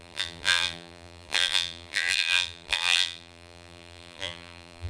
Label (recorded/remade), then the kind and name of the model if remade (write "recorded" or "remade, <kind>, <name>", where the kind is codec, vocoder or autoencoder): remade, vocoder, BigVGAN v2